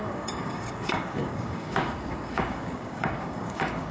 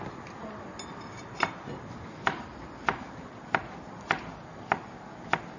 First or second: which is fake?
first